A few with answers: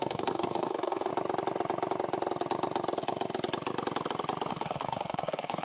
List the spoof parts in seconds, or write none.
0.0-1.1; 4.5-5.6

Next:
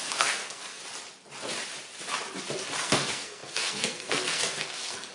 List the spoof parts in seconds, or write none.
0.0-0.8; 2.8-5.1

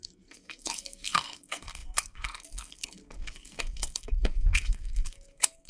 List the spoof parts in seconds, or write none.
0.0-5.7

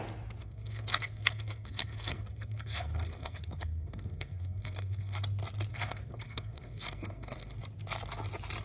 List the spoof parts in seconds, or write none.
0.4-5.2; 5.7-7.6